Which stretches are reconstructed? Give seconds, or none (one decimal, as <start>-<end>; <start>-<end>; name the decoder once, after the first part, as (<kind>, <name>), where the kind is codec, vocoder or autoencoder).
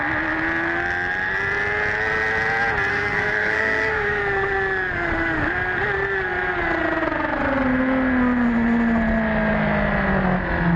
2.9-4.2 (codec, SNAC)